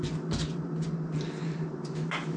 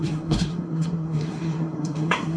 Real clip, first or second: first